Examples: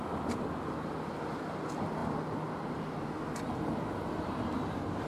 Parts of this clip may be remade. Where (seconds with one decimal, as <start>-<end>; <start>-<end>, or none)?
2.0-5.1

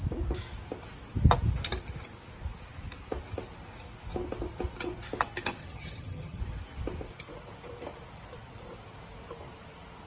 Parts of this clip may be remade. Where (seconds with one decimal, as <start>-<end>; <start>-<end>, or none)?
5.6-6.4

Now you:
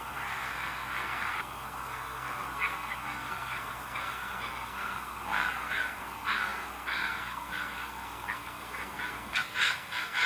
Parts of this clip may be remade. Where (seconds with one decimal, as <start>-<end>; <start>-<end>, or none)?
0.0-10.3

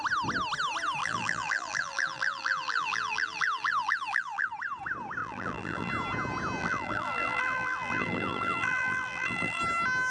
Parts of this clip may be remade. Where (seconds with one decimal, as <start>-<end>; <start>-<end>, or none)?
1.0-4.5; 5.2-5.9; 6.6-9.6